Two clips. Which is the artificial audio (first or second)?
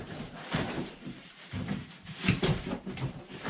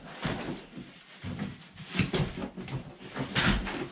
first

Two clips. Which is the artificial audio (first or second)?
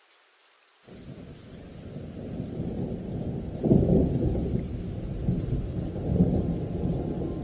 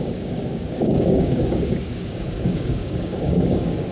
second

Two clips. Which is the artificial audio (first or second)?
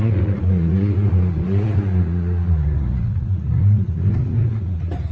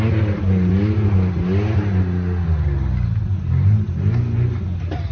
first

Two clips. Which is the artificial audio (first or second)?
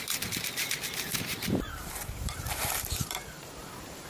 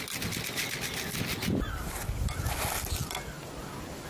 first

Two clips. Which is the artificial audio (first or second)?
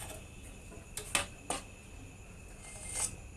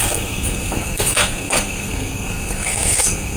second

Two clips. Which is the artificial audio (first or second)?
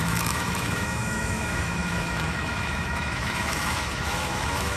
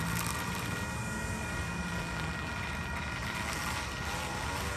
first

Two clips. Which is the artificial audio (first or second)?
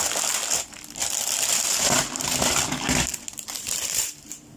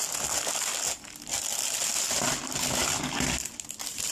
first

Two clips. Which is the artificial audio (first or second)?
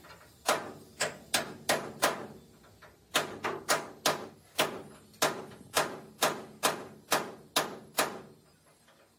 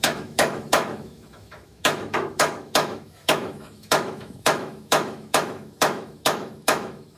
second